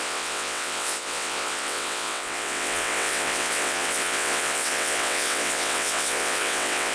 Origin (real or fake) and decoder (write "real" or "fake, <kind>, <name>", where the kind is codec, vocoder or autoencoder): fake, vocoder, WaveNeXt